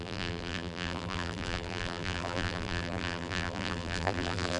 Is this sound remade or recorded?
remade